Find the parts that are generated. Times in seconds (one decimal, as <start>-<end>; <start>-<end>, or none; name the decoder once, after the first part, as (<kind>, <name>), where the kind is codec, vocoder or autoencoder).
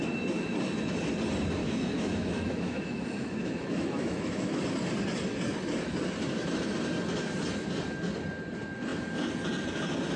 1.6-4.6 (autoencoder, DAC-VAE)